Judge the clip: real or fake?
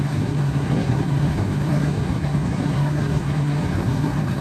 fake